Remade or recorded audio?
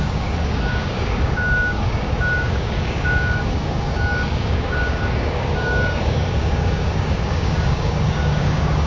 remade